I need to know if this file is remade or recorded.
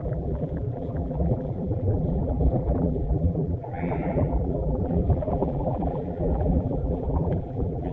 remade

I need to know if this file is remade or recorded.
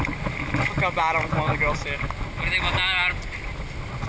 recorded